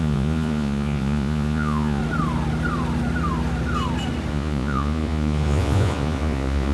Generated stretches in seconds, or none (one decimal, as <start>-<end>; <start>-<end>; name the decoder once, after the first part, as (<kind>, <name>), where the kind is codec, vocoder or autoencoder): 0.0-2.0 (vocoder, Vocos); 4.3-6.7